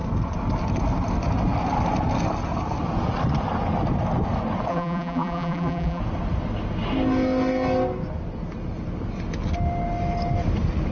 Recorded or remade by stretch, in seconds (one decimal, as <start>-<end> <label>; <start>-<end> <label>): 0.0-4.7 recorded; 4.7-6.0 remade; 6.0-10.9 recorded